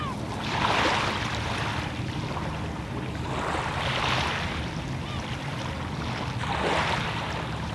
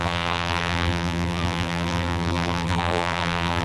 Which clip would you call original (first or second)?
first